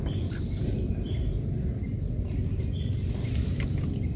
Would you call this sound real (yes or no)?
no